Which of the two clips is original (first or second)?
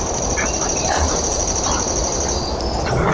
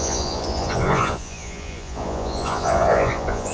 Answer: first